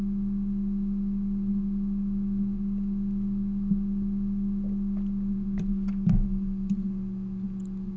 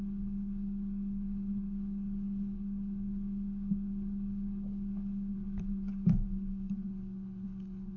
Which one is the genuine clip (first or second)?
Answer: first